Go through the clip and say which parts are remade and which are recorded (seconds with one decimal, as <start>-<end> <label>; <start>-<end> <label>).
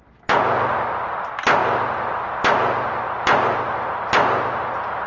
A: 0.0-5.1 recorded